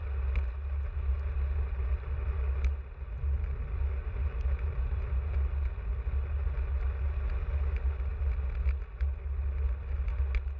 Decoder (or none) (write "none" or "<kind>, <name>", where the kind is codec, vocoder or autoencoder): none